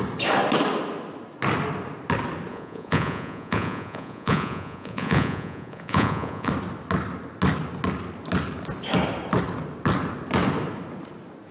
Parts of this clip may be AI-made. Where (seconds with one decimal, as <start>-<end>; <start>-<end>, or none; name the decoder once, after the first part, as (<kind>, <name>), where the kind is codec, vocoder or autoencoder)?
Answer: 2.5-6.5 (vocoder, Vocos)